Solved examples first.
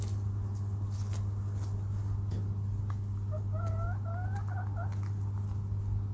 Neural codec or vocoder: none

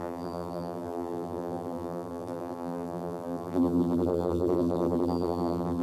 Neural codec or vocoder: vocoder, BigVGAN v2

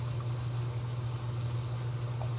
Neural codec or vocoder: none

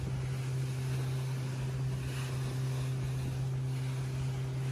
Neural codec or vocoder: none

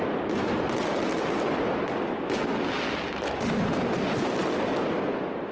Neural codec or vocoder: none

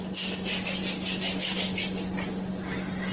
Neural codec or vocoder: none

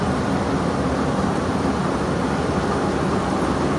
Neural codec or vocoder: none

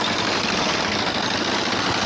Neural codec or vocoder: none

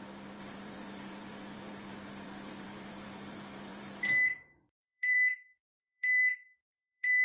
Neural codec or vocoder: vocoder, BigVGAN v2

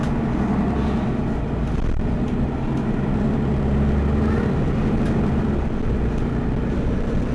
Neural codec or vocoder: none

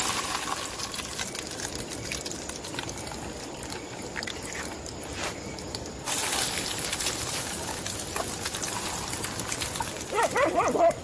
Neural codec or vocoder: vocoder, BigVGAN v2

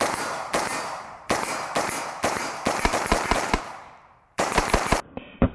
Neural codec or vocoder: vocoder, BigVGAN v2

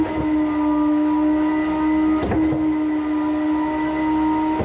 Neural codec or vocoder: none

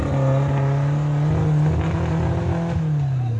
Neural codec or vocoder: none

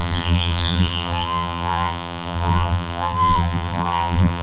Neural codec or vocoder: vocoder, BigVGAN v2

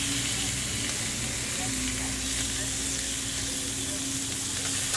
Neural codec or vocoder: none